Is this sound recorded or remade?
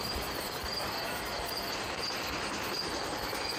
recorded